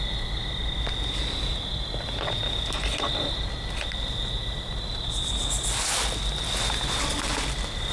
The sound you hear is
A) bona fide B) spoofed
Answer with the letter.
A